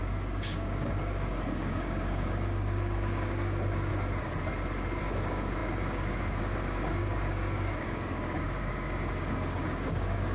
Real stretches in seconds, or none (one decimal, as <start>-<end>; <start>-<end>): 3.9-5.0